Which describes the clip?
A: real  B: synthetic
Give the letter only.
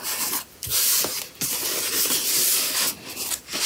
A